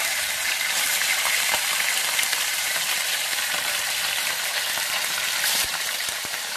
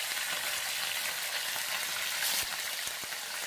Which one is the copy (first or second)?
first